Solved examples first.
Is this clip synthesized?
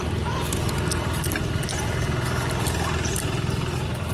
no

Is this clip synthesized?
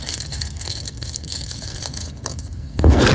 yes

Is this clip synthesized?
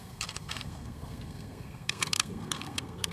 yes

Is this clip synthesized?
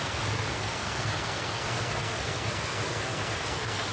yes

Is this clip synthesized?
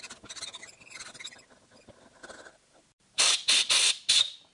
no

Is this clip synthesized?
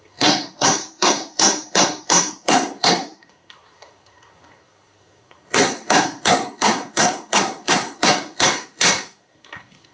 yes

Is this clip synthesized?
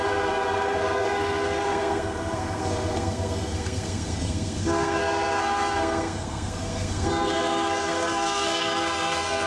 yes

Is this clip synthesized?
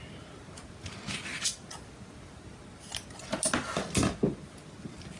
no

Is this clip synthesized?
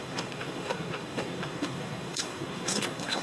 yes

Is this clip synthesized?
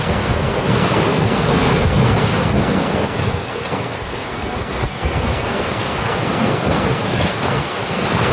yes